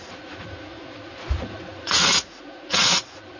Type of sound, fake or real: fake